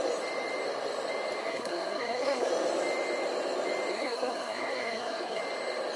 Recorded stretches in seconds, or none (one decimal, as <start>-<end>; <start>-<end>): 0.0-1.4; 2.5-3.9; 5.4-6.0